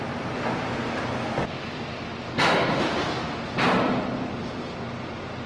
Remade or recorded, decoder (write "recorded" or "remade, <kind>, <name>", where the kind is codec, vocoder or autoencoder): recorded